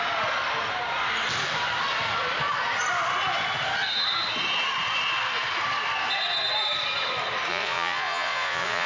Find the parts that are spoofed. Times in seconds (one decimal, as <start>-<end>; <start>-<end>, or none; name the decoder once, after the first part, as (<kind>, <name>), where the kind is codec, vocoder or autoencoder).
7.5-8.9 (vocoder, Vocos)